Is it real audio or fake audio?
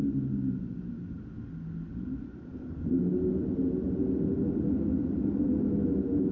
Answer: real